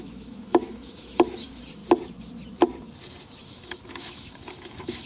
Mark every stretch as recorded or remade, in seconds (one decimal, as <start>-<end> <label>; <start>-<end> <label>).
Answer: 0.0-1.8 remade; 1.8-3.4 recorded; 3.4-5.1 remade